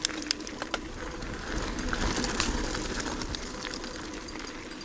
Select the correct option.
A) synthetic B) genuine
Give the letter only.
B